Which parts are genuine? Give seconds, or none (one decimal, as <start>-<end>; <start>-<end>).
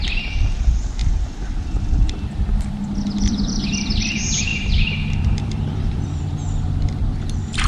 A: 0.0-1.0; 3.6-4.5; 6.2-7.7